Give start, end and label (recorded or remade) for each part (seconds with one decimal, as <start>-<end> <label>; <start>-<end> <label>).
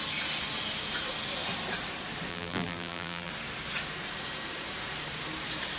0.0-2.3 recorded; 2.3-3.3 remade; 3.3-5.8 recorded